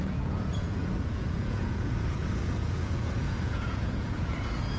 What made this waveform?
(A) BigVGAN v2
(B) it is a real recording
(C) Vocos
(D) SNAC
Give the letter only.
C